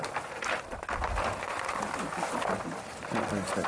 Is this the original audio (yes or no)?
yes